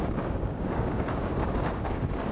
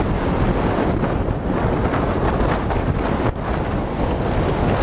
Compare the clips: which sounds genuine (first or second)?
second